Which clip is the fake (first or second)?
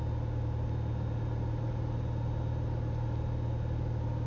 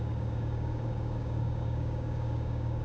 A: second